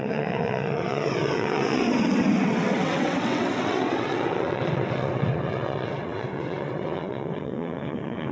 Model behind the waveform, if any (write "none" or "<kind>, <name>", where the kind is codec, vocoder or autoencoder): vocoder, WaveNeXt